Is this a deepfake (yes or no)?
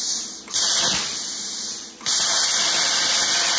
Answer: no